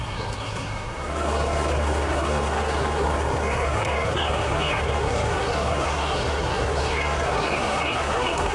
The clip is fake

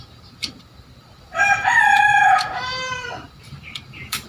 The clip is fake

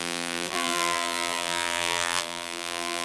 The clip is fake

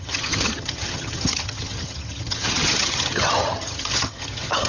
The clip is fake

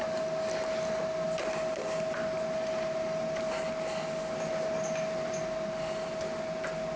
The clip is real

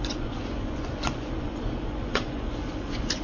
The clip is fake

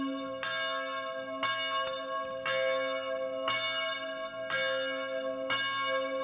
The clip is real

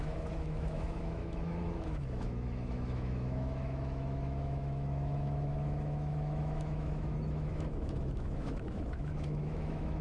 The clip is fake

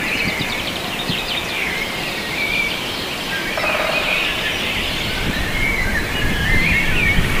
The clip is fake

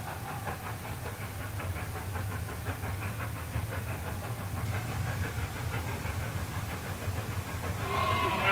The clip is real